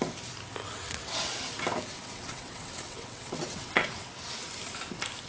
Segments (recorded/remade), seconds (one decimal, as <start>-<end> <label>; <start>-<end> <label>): 0.0-0.6 recorded; 0.6-1.5 remade; 1.5-1.9 recorded; 1.9-4.2 remade; 4.2-5.3 recorded